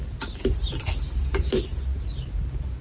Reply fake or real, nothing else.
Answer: real